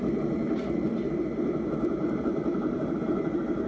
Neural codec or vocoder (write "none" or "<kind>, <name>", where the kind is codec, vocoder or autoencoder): none